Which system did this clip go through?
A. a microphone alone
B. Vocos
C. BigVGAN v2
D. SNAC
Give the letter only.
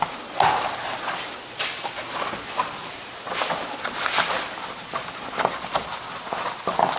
A